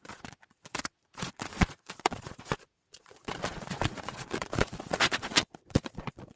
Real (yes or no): no